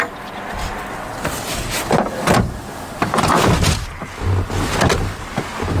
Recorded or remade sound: recorded